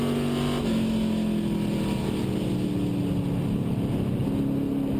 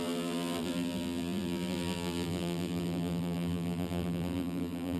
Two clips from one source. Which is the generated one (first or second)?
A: second